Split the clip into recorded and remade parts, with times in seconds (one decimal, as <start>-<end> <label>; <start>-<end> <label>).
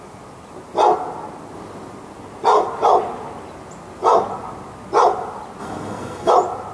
0.0-5.6 recorded; 5.6-6.3 remade; 6.3-6.7 recorded